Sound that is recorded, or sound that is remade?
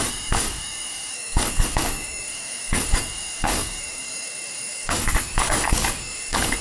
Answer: remade